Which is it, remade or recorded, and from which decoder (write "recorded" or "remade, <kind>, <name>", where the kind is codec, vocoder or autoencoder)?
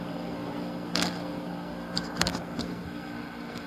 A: remade, codec, SNAC